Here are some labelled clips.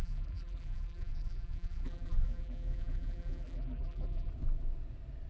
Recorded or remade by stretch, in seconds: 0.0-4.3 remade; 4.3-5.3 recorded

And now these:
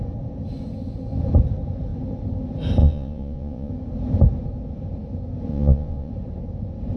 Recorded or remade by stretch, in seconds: 0.0-2.8 recorded; 2.8-3.7 remade; 3.7-5.5 recorded; 5.5-6.1 remade; 6.1-7.0 recorded

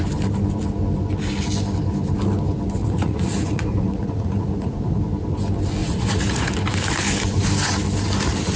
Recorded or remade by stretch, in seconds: 0.0-2.8 recorded; 2.8-5.0 remade; 5.0-5.8 recorded; 5.8-6.5 remade; 6.5-8.6 recorded

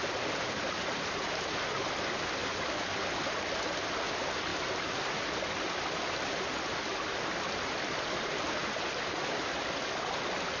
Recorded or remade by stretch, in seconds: 0.0-10.6 recorded

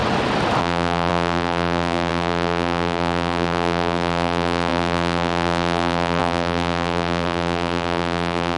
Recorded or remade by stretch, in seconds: 0.0-0.6 recorded; 0.6-8.6 remade